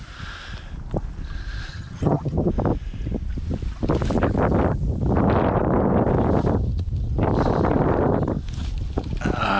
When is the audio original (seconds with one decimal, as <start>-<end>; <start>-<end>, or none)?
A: 0.0-1.7; 2.5-9.6